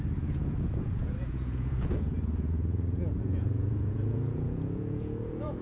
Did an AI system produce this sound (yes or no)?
yes